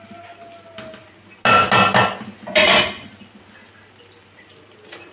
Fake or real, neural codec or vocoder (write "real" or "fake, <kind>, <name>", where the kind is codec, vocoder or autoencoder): real